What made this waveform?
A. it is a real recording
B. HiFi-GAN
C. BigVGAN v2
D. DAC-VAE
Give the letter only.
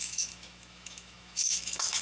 D